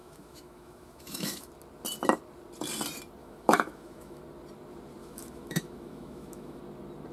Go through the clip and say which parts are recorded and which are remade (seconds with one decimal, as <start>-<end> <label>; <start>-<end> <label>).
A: 0.0-1.5 remade; 1.5-3.2 recorded; 3.2-4.2 remade; 4.2-5.0 recorded; 5.0-6.6 remade; 6.6-7.1 recorded